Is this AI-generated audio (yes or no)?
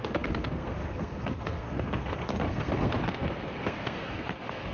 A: yes